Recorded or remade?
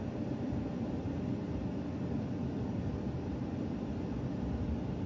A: recorded